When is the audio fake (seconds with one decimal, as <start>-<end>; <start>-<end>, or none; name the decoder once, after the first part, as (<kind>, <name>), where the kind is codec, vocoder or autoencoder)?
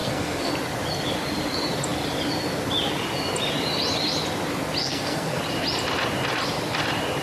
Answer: 0.0-0.5 (codec, SNAC); 4.8-5.4